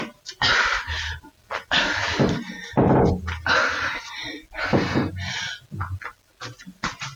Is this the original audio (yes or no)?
yes